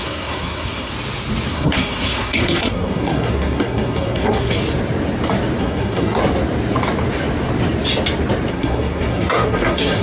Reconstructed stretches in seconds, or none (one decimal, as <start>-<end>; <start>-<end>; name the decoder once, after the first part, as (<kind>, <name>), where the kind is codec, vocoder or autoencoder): 0.0-0.9 (codec, SNAC); 1.5-4.6; 5.6-6.2; 8.5-10.0